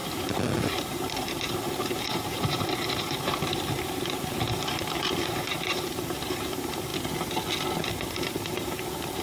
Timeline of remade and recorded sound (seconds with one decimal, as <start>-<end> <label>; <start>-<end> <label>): 0.0-6.9 remade; 6.9-7.9 recorded; 7.9-9.2 remade